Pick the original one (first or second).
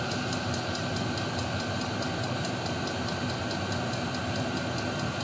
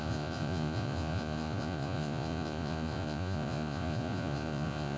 first